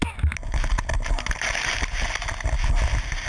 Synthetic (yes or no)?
no